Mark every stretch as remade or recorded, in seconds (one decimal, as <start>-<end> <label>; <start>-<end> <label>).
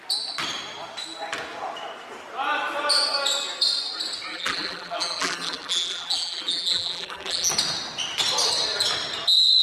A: 0.0-4.3 recorded; 4.3-7.5 remade; 7.5-9.6 recorded